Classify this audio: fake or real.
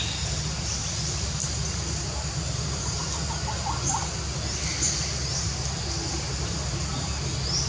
real